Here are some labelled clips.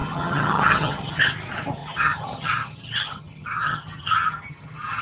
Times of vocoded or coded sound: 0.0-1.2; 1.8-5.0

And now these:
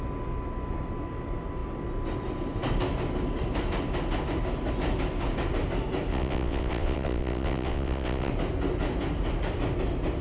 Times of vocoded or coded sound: 6.1-8.3

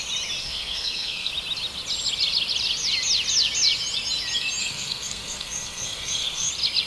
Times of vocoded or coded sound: 0.4-1.3; 4.6-6.5

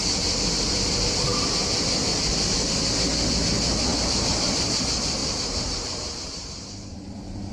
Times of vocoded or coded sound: 3.9-4.7; 5.2-7.5

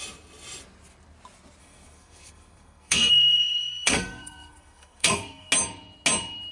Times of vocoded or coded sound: 1.6-5.5

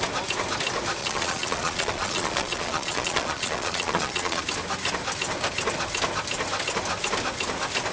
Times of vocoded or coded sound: 1.0-4.4

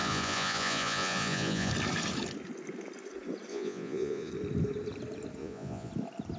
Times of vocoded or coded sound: 0.0-1.7; 3.5-4.3; 5.4-5.9